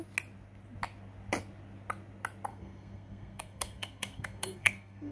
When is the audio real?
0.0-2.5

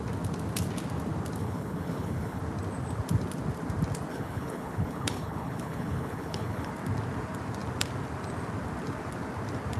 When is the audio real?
0.0-1.4; 2.4-4.1; 6.7-9.8

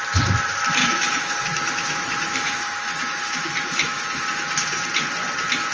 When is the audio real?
0.0-0.8; 4.2-5.7

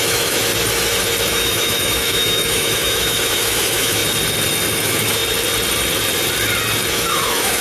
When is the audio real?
0.5-1.2; 4.0-4.7; 5.2-6.9

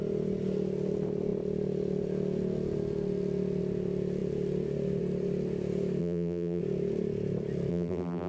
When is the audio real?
0.0-6.0; 6.6-7.7